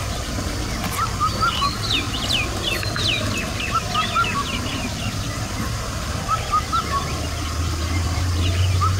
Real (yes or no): yes